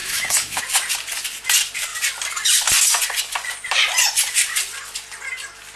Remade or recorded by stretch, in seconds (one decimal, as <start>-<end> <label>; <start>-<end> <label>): 0.0-0.6 remade; 0.6-5.8 recorded